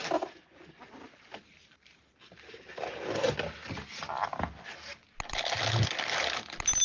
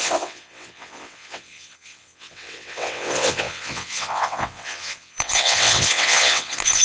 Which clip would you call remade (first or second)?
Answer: second